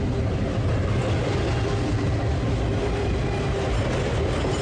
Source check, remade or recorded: recorded